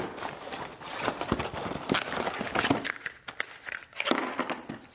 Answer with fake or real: real